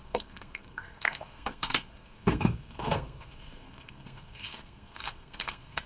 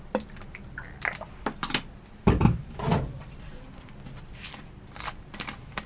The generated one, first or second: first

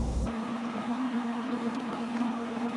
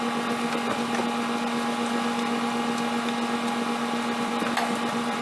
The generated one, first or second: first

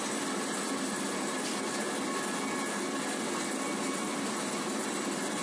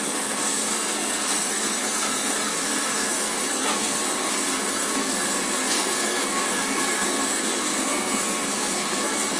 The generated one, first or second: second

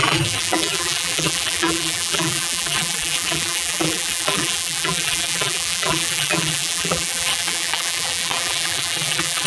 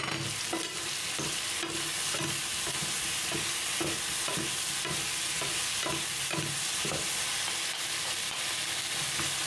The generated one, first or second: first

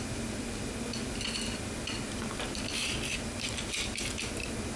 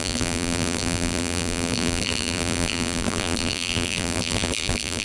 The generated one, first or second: second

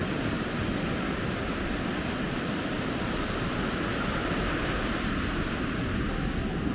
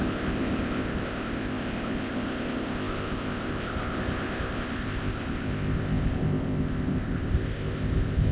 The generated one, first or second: second